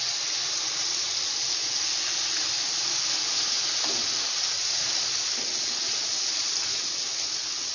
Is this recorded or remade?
recorded